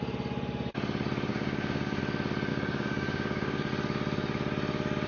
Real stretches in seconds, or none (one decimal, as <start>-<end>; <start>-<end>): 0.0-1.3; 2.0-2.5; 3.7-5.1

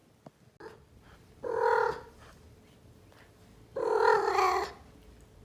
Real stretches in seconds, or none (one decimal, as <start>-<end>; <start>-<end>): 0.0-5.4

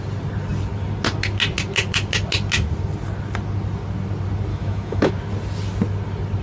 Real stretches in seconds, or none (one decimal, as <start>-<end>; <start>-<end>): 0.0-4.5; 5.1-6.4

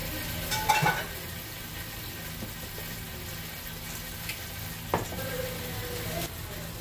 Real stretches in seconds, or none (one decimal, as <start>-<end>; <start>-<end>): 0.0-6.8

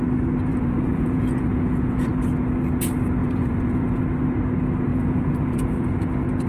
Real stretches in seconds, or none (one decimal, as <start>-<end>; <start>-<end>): 0.0-0.5; 2.2-3.2; 4.0-4.9; 6.1-6.5

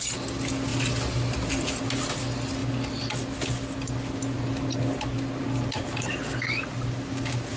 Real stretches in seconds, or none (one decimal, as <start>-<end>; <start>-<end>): 0.0-7.6

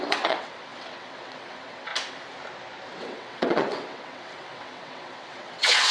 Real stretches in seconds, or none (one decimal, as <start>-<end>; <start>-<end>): 1.9-3.0